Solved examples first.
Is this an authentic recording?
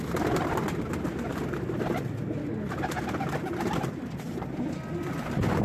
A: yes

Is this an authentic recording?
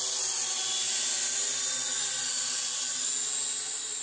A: yes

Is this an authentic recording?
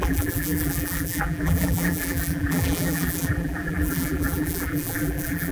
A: no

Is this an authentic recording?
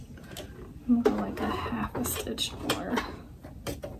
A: yes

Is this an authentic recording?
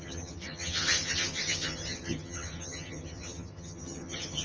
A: no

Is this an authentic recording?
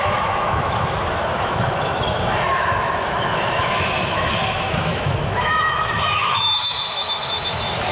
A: no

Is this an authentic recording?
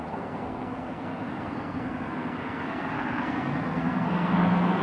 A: no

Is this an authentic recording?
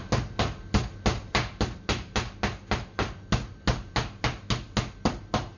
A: yes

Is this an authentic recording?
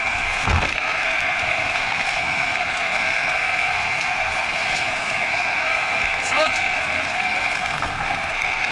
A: no